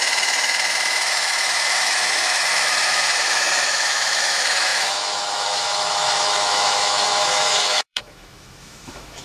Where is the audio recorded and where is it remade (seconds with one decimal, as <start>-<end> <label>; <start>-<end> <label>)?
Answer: 0.0-9.2 remade